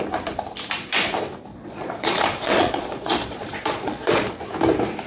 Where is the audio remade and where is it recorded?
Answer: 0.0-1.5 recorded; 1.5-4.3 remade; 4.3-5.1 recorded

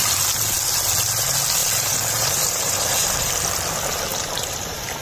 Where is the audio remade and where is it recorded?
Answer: 0.0-1.6 recorded; 1.6-3.3 remade; 3.3-4.1 recorded; 4.1-5.0 remade